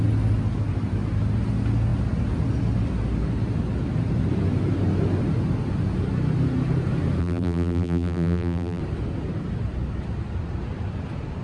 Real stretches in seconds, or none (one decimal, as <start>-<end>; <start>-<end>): 0.0-7.2; 8.8-11.4